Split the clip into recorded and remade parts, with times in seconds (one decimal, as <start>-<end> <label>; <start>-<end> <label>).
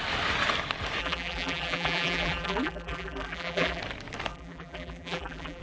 0.0-1.0 recorded; 1.0-3.8 remade; 3.8-4.3 recorded; 4.3-5.6 remade